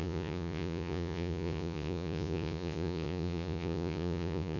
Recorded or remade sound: remade